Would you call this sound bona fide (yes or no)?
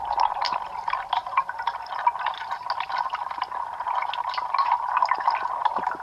yes